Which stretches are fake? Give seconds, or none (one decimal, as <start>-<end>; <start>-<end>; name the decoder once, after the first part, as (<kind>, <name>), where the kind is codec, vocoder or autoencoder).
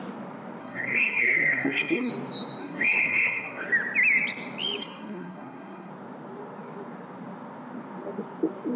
0.6-2.1 (codec, SNAC); 2.6-3.7; 4.8-5.9